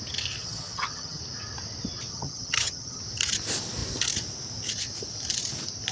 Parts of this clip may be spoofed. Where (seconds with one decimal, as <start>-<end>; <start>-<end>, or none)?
0.4-1.2; 2.1-3.0